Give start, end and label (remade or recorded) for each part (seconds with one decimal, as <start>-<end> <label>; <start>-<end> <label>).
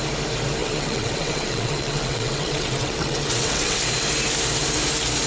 0.0-0.6 recorded; 0.6-3.8 remade; 3.8-5.3 recorded